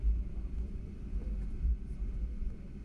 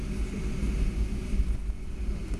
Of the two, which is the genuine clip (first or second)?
second